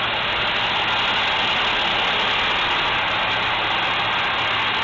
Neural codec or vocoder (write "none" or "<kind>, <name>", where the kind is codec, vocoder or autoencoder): none